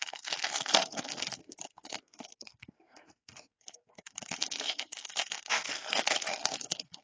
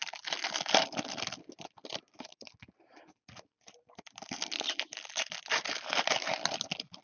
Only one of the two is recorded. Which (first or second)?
second